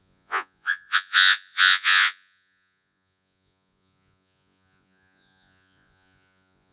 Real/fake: fake